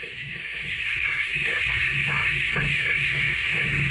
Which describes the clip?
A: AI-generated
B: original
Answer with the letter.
A